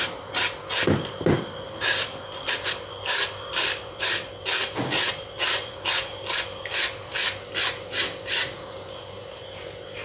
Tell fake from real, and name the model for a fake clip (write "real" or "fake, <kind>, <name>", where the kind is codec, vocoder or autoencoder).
real